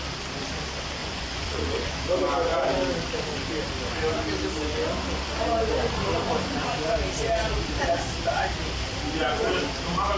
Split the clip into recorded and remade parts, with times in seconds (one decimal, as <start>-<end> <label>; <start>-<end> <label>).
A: 0.0-1.0 recorded; 1.0-2.1 remade; 2.1-10.2 recorded